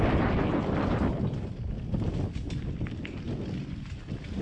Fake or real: real